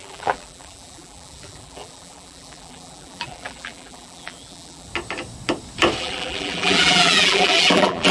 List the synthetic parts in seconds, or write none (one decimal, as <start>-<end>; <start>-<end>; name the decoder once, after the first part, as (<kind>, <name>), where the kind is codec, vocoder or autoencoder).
0.0-4.9 (vocoder, BigVGAN v2); 6.0-8.1